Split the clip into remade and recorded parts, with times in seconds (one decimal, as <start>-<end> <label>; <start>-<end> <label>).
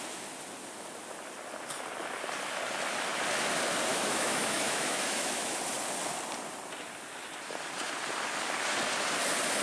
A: 0.0-3.9 recorded; 3.9-5.6 remade; 5.6-9.6 recorded